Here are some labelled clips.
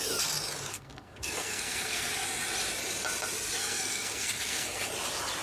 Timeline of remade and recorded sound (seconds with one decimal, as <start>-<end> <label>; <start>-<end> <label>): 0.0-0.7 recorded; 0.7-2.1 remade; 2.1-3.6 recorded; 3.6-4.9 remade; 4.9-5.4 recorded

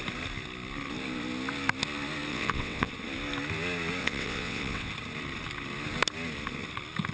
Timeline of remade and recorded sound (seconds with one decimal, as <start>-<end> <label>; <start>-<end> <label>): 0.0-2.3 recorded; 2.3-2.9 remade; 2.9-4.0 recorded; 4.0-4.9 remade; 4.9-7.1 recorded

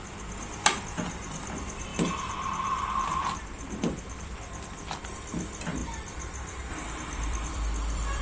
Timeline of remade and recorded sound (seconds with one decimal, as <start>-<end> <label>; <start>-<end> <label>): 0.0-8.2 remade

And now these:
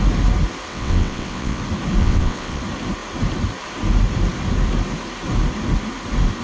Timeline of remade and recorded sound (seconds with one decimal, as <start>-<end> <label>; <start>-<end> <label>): 0.0-0.7 recorded; 0.7-1.6 remade; 1.6-2.0 recorded; 2.0-2.6 remade; 2.6-6.4 recorded

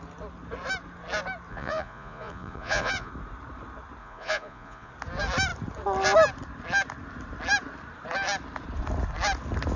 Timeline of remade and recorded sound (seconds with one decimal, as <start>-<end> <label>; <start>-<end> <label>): 0.0-1.5 recorded; 1.5-3.1 remade; 3.1-4.0 recorded; 4.0-4.9 remade; 4.9-9.8 recorded